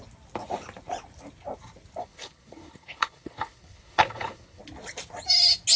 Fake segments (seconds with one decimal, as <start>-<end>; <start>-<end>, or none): 2.0-4.6